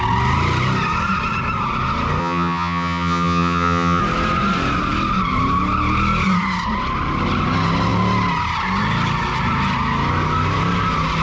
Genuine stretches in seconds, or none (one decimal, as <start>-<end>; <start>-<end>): 0.0-2.2; 4.0-11.2

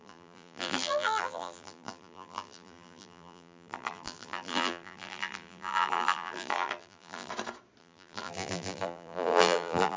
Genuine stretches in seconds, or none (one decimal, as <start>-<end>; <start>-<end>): 7.3-7.8